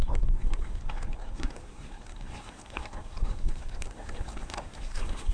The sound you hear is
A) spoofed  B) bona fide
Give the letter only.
A